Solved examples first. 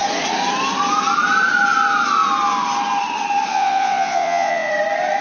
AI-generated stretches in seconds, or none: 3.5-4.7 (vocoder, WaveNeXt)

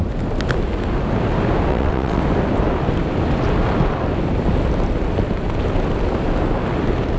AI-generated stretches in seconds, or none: 1.7-2.2 (vocoder, WaveNeXt)

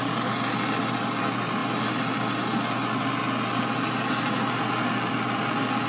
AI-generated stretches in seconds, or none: none

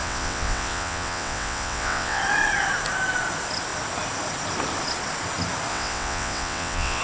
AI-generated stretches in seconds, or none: 0.0-2.2 (vocoder, WaveNeXt); 5.7-7.0

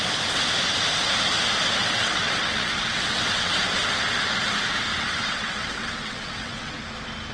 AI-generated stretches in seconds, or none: 1.8-3.5 (vocoder, WaveNeXt); 4.9-6.7

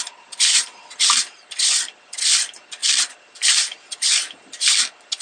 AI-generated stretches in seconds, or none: none

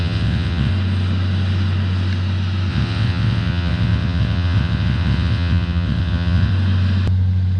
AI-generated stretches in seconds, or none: 0.0-0.7 (vocoder, WaveNeXt); 2.7-6.5

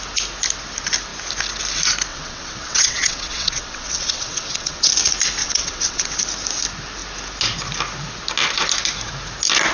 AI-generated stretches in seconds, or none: 2.1-4.9 (vocoder, WaveNeXt); 5.4-6.2